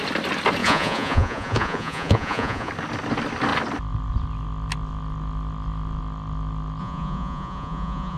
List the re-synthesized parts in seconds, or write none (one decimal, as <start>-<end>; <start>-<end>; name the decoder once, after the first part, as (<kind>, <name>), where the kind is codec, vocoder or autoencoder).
0.6-2.7 (vocoder, Vocos); 6.8-8.2